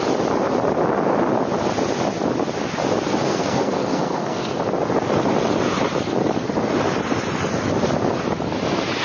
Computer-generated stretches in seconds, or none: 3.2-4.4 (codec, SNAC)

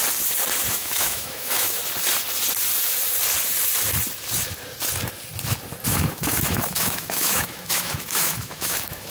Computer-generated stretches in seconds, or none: 0.7-1.8 (autoencoder, DAC-VAE); 5.9-9.1